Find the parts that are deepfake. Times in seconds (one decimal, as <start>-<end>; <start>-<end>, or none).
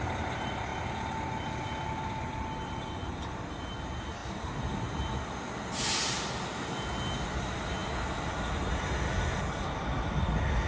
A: none